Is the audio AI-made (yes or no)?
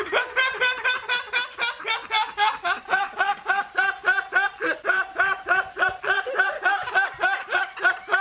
yes